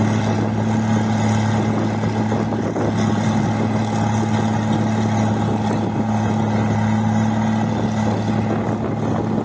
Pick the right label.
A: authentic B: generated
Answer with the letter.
A